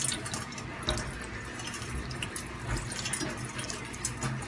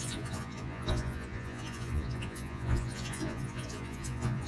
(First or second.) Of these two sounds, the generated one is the second